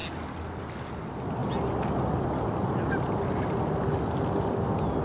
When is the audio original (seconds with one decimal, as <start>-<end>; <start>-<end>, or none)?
0.0-5.0